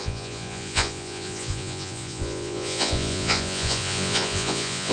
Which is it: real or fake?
fake